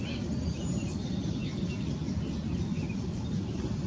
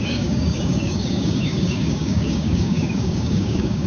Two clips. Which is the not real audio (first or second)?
second